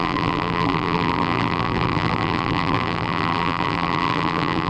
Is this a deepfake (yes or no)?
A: yes